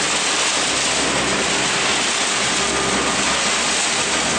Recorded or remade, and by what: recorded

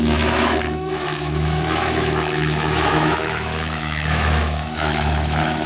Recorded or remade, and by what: remade, autoencoder, DAC-VAE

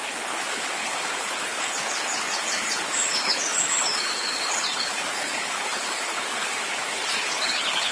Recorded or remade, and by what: remade, codec, HILCodec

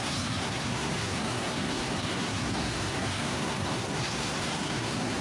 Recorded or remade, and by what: remade, codec, SNAC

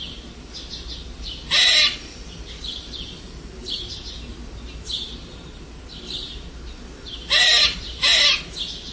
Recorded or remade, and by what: recorded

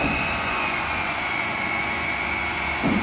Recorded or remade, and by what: remade, vocoder, Vocos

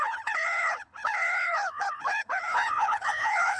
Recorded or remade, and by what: remade, codec, HILCodec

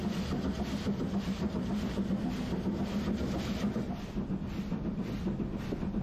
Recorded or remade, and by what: recorded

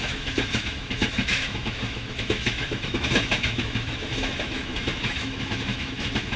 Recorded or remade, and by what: remade, autoencoder, DAC-VAE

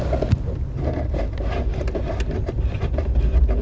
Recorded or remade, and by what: recorded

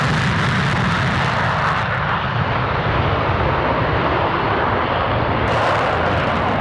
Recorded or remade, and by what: recorded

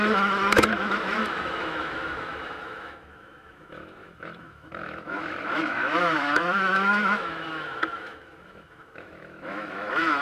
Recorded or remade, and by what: remade, autoencoder, DAC-VAE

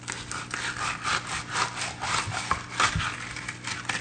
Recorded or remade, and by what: recorded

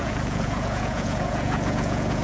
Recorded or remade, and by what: remade, vocoder, Vocos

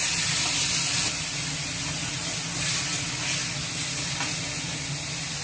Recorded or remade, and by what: recorded